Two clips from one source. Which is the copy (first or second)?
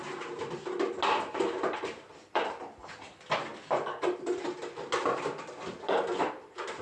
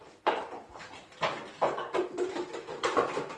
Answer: second